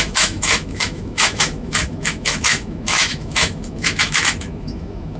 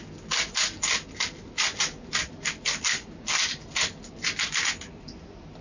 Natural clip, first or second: second